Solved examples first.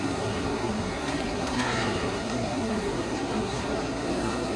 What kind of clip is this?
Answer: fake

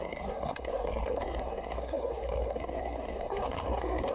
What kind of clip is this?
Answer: fake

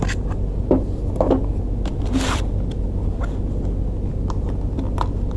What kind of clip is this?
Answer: real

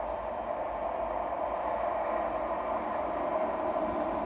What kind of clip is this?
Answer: real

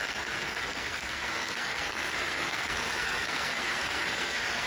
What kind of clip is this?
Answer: fake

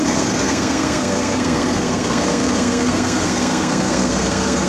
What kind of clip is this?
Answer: fake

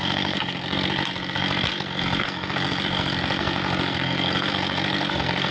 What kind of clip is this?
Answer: fake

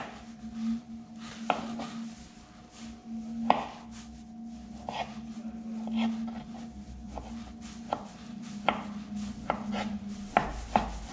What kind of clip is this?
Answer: real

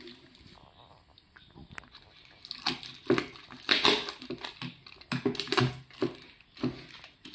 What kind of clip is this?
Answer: real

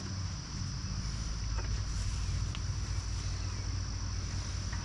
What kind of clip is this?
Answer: real